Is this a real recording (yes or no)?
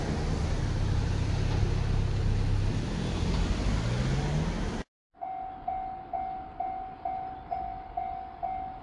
yes